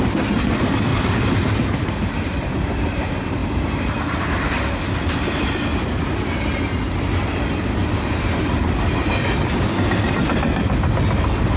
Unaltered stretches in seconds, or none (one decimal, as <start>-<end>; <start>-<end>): 0.0-0.9; 2.5-3.4; 5.8-11.6